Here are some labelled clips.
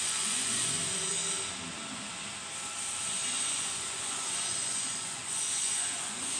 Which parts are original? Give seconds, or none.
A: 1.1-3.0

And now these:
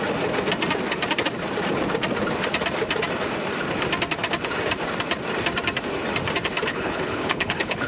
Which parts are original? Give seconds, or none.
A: 0.0-6.7